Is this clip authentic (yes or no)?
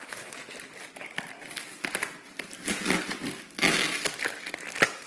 yes